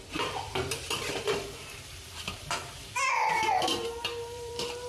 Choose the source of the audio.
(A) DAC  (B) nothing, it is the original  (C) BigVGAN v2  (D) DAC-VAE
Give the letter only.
C